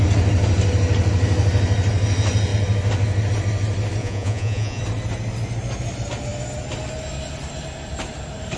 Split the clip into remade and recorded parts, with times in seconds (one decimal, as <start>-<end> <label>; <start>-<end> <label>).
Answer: 0.0-4.0 recorded; 4.0-4.8 remade; 4.8-8.6 recorded